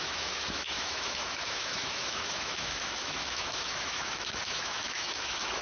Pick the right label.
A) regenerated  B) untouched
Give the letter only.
A